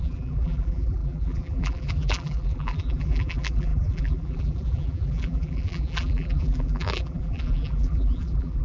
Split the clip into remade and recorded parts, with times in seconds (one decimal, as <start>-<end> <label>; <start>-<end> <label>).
0.0-8.6 remade